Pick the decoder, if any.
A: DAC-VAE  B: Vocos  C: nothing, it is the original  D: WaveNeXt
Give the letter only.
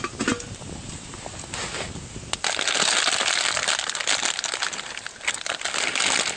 C